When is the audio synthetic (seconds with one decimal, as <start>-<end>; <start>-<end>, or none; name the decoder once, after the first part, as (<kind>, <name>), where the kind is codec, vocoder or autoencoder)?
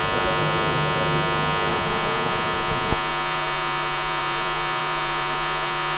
1.7-6.0 (vocoder, Vocos)